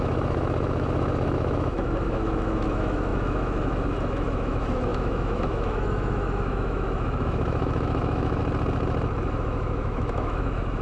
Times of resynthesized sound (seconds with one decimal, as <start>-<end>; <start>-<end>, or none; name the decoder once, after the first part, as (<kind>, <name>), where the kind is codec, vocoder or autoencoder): 0.0-8.4 (autoencoder, DAC-VAE); 9.1-10.8